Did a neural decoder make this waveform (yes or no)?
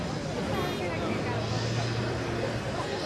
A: no